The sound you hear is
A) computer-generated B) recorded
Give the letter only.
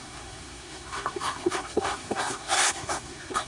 A